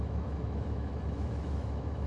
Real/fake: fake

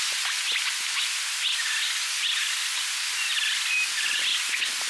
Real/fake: real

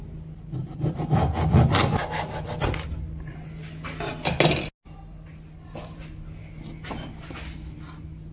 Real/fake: real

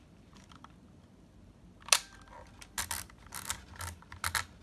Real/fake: real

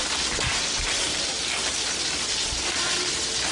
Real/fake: real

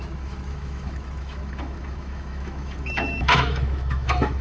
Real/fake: fake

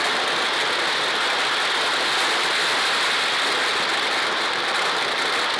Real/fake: real